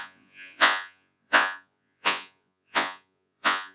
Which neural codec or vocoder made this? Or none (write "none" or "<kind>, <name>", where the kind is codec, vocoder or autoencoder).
vocoder, Vocos